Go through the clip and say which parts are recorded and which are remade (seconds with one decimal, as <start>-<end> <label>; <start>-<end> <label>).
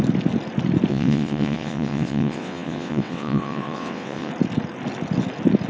0.0-0.9 recorded; 0.9-4.3 remade; 4.3-5.7 recorded